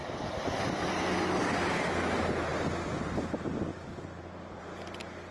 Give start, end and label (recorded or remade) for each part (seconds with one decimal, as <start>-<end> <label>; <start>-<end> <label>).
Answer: 0.0-2.5 recorded; 2.5-3.2 remade; 3.2-3.7 recorded; 3.7-4.6 remade; 4.6-5.3 recorded